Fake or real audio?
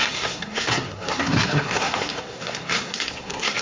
fake